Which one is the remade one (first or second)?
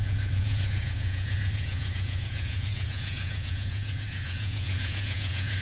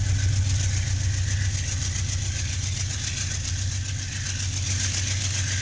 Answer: first